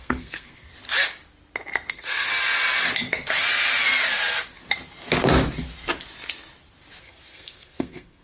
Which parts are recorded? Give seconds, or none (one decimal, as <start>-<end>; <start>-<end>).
0.7-1.9; 2.3-7.0